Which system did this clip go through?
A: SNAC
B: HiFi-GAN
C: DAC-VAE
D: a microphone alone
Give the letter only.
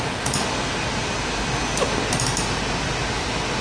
D